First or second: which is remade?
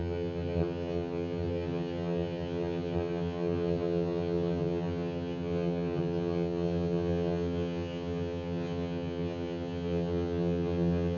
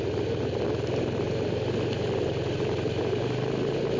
first